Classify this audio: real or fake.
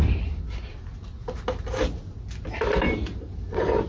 real